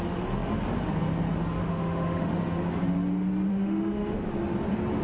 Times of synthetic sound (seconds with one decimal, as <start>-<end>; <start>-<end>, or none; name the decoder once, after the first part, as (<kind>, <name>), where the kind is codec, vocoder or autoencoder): 1.6-2.3 (autoencoder, DAC-VAE); 3.5-4.3